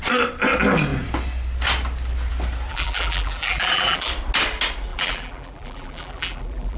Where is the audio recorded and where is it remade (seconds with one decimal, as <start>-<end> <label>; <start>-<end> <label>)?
0.0-2.7 recorded; 2.7-4.1 remade; 4.1-4.9 recorded; 4.9-6.8 remade